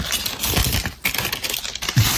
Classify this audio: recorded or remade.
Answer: recorded